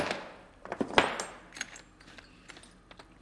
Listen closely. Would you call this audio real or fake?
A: real